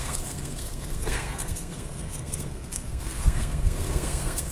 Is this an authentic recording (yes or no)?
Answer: no